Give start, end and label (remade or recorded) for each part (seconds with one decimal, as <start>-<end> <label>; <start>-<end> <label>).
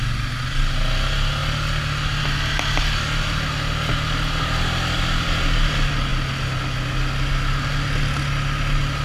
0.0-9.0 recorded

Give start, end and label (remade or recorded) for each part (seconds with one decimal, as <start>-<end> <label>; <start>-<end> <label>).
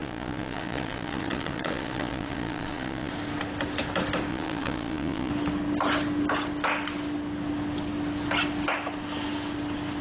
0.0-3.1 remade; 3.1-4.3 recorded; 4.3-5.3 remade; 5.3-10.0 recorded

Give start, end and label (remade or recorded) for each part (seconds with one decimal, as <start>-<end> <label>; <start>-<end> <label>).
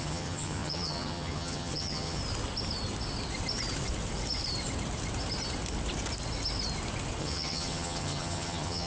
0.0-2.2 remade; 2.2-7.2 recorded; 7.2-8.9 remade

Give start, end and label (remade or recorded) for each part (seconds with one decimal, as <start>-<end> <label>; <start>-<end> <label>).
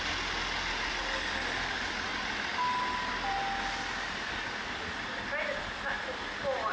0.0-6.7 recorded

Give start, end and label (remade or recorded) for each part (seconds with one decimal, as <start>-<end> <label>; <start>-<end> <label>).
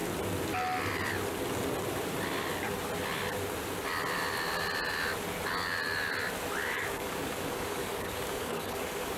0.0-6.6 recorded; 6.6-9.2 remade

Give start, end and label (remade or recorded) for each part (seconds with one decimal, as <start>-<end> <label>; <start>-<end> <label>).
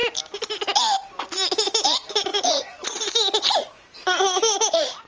0.0-2.3 recorded; 2.3-3.0 remade; 3.0-5.1 recorded